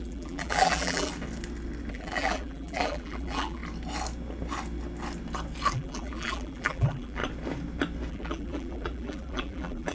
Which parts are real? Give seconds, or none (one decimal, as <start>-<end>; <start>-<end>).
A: 1.1-1.9; 3.6-5.7; 7.2-8.1